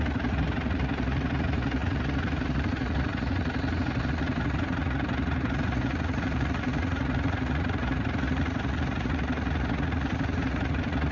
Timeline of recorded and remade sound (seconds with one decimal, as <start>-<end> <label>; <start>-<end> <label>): 0.0-11.1 remade